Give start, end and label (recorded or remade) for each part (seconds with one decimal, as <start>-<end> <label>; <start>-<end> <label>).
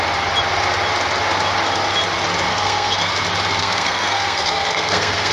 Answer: 0.0-2.5 recorded; 2.5-3.1 remade; 3.1-3.6 recorded; 3.6-5.3 remade